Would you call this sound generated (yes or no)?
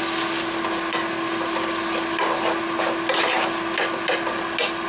no